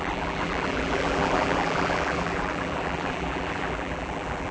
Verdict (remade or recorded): remade